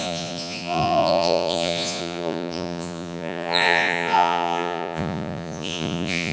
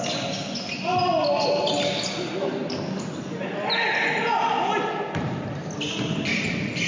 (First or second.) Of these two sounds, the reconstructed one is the first